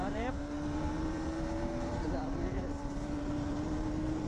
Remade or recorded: remade